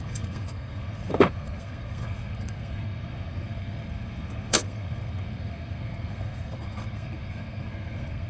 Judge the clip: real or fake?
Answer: fake